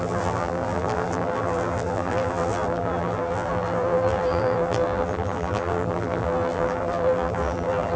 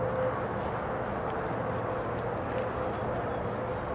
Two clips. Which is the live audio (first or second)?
second